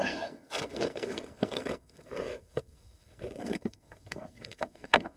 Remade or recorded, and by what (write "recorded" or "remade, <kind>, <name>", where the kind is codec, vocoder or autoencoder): remade, codec, SNAC